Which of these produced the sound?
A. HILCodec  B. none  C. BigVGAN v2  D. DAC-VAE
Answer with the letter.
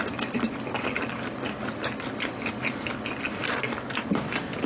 B